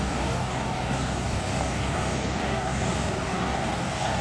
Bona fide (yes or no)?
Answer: no